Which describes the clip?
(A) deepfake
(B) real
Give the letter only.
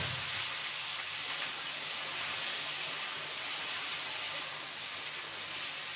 B